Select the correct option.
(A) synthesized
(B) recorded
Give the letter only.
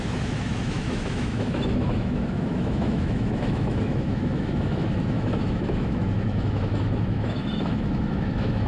A